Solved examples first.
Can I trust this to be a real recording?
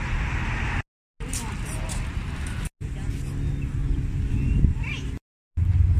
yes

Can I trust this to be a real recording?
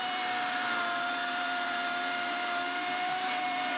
no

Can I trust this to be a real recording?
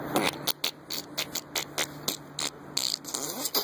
yes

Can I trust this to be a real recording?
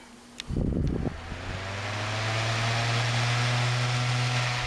yes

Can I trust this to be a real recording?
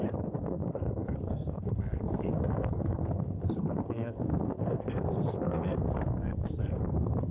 no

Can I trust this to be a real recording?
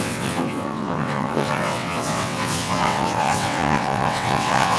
no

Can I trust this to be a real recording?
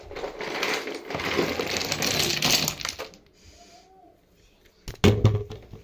yes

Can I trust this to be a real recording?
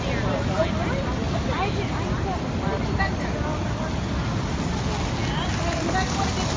yes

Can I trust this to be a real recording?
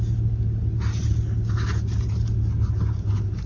yes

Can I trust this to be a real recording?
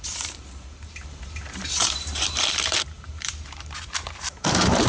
no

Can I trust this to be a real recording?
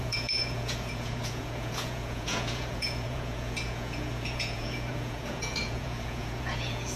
no